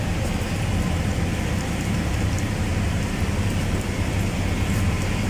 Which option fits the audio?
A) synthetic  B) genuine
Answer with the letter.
A